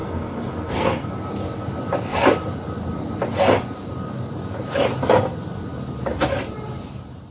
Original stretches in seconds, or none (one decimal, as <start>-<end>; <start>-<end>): 1.1-7.3